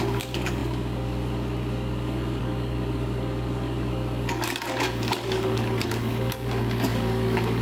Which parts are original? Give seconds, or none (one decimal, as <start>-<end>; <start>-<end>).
none